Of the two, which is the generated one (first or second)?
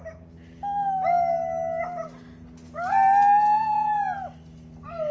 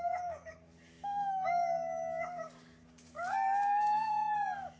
second